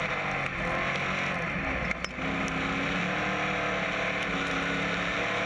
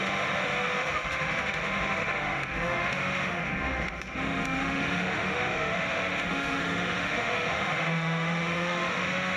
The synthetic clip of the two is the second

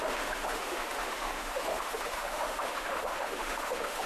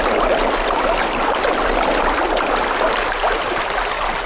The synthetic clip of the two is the first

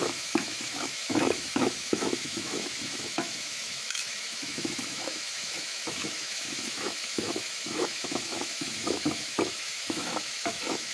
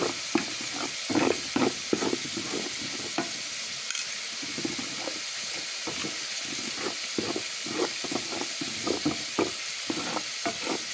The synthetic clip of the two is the first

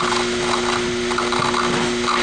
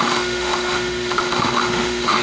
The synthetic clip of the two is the second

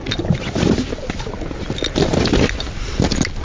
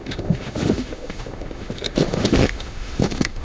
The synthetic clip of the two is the second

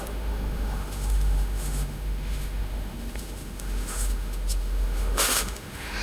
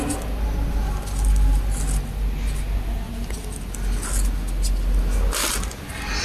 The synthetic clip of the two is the first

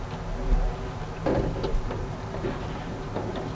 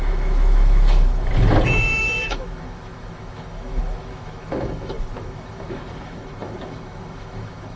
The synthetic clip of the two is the second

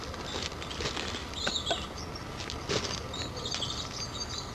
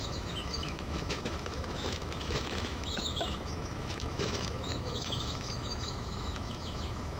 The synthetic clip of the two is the second